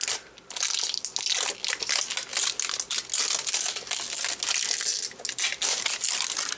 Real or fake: real